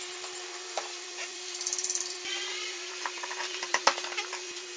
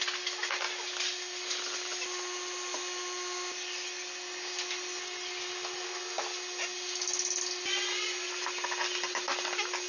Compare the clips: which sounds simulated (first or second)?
first